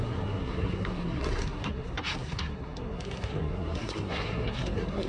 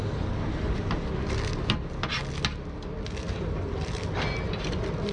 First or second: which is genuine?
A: second